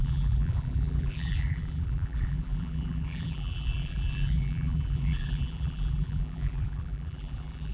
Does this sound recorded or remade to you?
remade